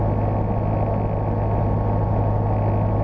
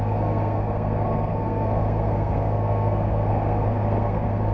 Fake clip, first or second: second